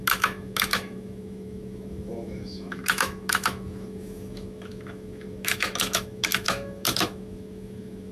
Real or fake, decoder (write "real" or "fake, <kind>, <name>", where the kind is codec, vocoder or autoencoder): fake, autoencoder, DAC-VAE